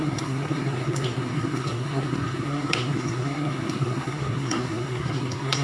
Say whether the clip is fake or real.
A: fake